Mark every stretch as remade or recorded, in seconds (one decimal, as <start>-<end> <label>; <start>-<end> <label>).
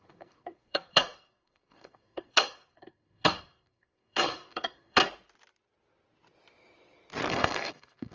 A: 0.0-5.0 remade; 5.0-7.3 recorded; 7.3-8.1 remade